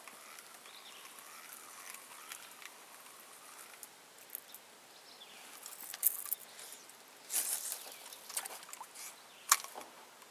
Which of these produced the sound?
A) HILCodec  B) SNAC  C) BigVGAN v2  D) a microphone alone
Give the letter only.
D